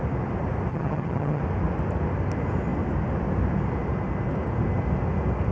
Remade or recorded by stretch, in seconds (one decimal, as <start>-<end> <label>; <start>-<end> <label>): 0.0-0.7 recorded; 0.7-1.4 remade; 1.4-5.5 recorded